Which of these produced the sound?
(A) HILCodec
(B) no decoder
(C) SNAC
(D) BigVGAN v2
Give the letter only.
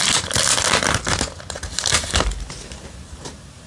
B